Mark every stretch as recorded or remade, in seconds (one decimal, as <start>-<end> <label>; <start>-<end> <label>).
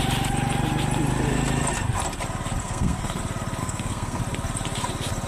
0.0-2.6 recorded; 2.6-3.2 remade; 3.2-3.6 recorded; 3.6-4.2 remade; 4.2-5.3 recorded